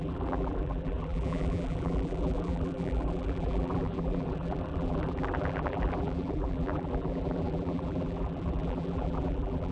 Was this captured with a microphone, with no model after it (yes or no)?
no